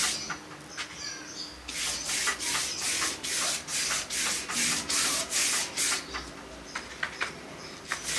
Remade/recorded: recorded